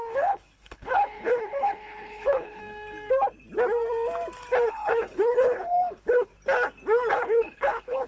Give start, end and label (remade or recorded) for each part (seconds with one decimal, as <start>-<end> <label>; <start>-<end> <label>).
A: 0.0-2.6 remade; 2.6-4.7 recorded; 4.7-6.3 remade; 6.3-7.1 recorded; 7.1-8.1 remade